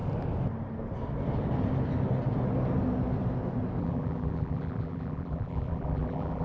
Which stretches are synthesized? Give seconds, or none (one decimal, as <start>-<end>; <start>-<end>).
3.8-6.4